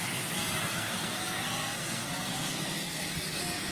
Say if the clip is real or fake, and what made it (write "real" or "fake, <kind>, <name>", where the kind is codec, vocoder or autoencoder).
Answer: fake, codec, SNAC